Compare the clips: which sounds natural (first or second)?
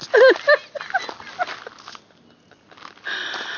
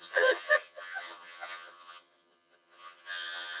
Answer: first